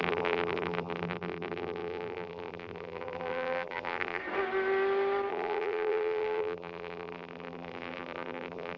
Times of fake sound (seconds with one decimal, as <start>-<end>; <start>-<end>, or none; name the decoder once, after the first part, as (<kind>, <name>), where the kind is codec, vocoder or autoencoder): 0.0-4.2 (vocoder, BigVGAN v2); 5.3-8.8